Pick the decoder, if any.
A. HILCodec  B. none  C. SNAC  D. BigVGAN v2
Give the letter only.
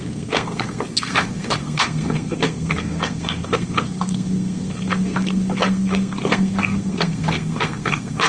C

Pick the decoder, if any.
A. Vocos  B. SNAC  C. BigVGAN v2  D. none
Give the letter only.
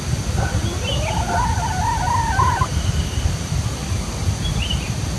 D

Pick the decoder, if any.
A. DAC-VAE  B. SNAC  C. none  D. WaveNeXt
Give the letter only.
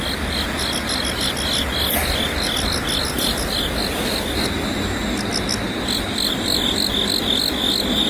C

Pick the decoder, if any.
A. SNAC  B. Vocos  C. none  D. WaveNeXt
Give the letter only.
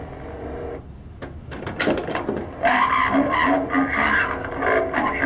C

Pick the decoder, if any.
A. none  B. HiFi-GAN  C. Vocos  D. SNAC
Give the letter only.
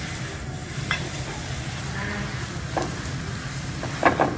A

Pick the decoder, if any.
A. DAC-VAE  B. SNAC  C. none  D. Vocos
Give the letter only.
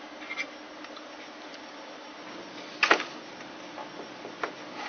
C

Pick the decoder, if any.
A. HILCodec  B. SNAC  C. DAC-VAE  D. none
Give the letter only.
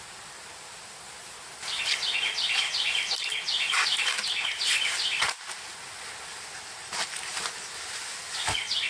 D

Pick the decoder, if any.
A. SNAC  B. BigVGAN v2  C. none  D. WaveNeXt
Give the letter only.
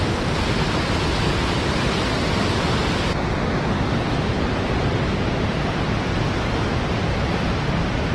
C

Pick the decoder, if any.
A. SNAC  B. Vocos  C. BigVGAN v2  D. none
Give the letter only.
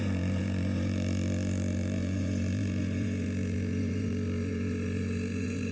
B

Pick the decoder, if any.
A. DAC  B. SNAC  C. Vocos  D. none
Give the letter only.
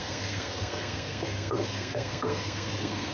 B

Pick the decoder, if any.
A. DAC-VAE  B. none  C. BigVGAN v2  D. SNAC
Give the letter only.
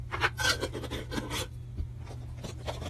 B